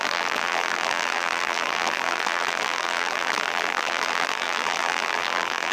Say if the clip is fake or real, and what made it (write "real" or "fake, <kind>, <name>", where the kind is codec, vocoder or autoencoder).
fake, vocoder, BigVGAN v2